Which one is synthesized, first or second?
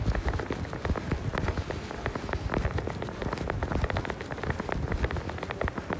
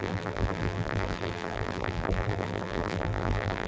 second